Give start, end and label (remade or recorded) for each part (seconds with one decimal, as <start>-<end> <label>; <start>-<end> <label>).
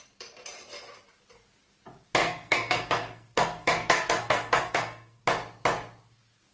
0.0-2.2 recorded; 2.2-5.2 remade; 5.2-6.5 recorded